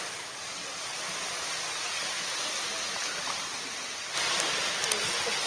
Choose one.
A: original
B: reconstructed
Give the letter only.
A